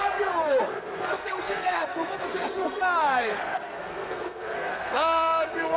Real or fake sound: fake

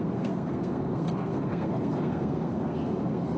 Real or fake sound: fake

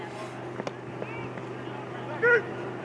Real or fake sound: real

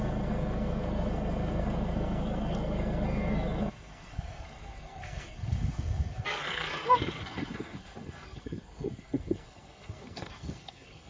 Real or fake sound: fake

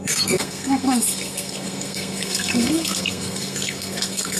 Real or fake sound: fake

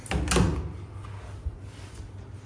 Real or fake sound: real